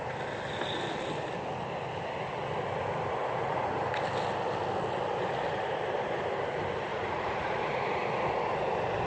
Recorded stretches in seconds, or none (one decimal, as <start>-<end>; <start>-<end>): 0.0-3.2; 3.7-6.9; 8.3-9.1